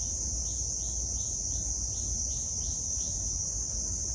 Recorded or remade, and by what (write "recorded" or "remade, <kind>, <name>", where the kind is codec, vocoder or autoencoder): recorded